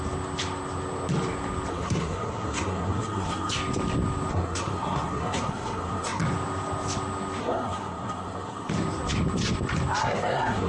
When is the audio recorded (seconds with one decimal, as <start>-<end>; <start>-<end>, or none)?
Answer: 0.0-1.7; 3.5-4.3; 6.2-7.4; 8.7-10.0